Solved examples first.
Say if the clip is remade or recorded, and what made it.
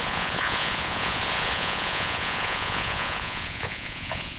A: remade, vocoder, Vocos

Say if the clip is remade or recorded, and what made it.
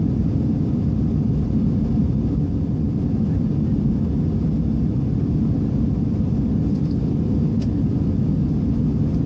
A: recorded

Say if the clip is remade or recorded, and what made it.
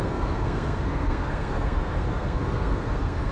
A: remade, codec, SNAC